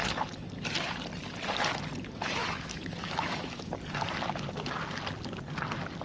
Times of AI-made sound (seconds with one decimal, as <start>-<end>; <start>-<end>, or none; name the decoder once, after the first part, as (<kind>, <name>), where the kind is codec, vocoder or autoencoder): 2.4-3.7 (autoencoder, DAC-VAE)